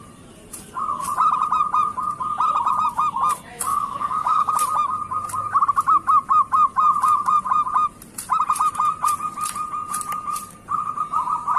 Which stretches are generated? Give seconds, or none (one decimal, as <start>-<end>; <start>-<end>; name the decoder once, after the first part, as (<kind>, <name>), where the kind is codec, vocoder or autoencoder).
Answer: 3.7-4.5 (codec, DAC)